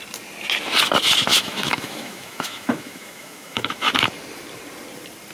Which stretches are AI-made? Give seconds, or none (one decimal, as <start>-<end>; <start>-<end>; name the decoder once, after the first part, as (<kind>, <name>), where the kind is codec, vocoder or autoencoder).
1.3-3.9 (autoencoder, DAC-VAE)